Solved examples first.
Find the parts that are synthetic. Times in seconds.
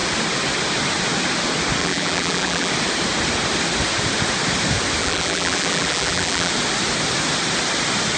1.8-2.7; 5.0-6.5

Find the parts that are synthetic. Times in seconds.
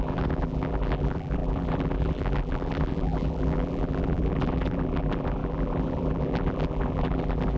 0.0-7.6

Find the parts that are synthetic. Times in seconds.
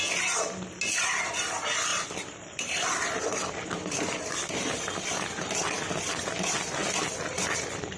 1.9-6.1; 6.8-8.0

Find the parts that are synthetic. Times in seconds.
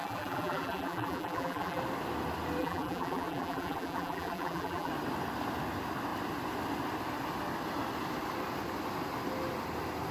0.0-1.8; 2.6-4.9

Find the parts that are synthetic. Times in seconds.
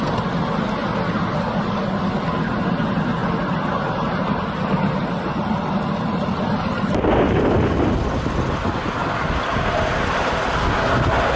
0.8-2.0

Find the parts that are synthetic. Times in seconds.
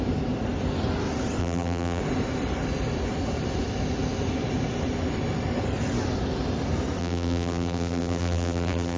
1.4-2.0; 7.0-9.0